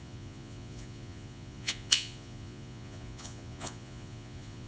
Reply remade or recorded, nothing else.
remade